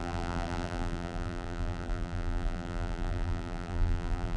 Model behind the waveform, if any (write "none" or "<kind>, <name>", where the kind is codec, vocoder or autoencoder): vocoder, BigVGAN v2